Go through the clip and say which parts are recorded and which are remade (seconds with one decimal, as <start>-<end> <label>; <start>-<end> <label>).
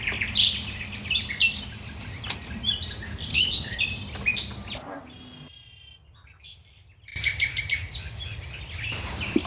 0.0-3.3 recorded; 3.3-3.8 remade; 3.8-9.5 recorded